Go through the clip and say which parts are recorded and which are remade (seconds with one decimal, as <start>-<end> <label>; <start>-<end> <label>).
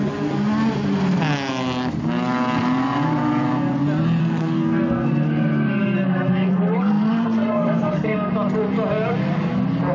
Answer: 0.0-4.2 recorded; 4.2-8.3 remade; 8.3-9.9 recorded